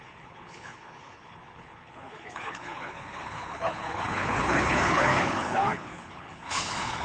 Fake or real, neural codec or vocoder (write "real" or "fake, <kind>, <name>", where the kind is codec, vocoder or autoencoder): fake, codec, HILCodec